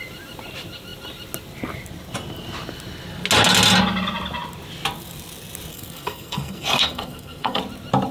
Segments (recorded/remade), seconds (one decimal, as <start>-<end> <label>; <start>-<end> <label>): 0.0-5.7 recorded; 5.7-7.6 remade; 7.6-8.1 recorded